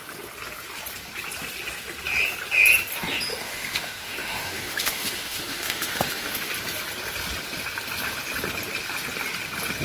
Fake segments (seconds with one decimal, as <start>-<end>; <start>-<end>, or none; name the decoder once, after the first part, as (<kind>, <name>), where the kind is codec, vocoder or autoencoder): 3.3-6.5 (autoencoder, DAC-VAE)